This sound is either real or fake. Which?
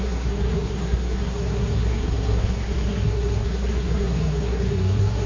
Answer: fake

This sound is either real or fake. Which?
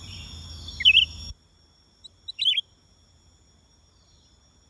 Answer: real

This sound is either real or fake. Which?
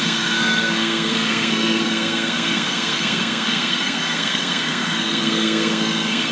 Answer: fake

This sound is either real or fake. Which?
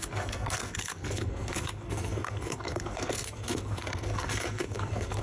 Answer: fake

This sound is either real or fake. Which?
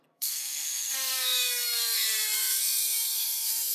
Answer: fake